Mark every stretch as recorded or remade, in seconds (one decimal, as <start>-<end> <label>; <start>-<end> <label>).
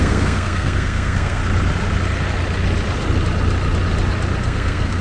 0.0-1.4 remade; 1.4-4.4 recorded; 4.4-5.0 remade